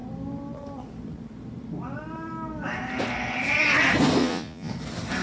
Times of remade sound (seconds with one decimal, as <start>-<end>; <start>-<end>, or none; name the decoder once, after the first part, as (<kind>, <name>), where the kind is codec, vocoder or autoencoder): 4.2-4.7 (vocoder, Vocos)